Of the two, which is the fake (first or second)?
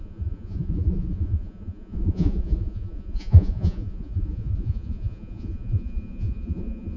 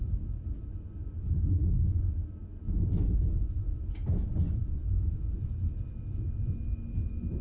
first